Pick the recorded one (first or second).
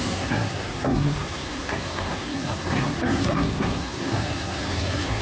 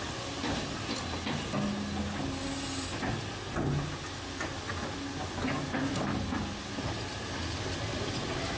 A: second